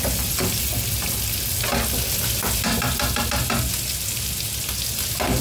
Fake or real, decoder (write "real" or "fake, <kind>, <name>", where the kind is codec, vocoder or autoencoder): real